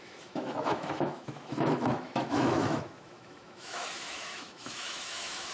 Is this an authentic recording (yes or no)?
no